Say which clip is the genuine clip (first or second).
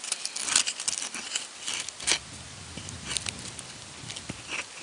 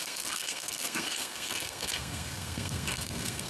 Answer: first